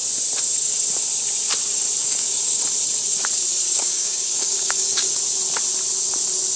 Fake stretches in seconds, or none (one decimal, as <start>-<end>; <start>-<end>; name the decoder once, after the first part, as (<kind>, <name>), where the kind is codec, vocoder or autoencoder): 2.0-2.6 (codec, DAC); 3.5-5.2